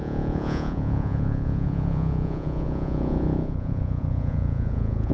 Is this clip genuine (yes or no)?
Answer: no